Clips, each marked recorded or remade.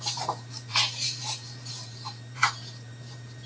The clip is remade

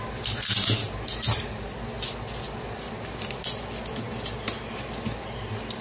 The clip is recorded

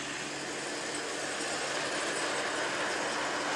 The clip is recorded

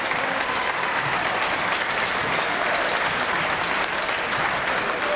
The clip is remade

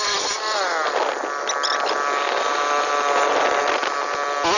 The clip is recorded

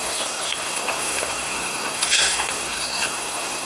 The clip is remade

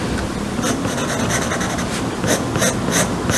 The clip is recorded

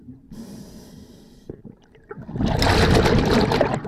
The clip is recorded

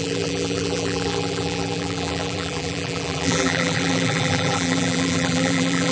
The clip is remade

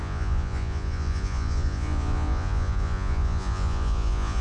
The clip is remade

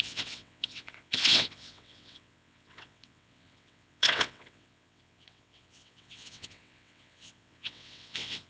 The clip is remade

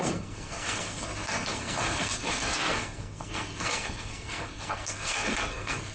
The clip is remade